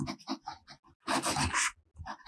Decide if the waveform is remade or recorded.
recorded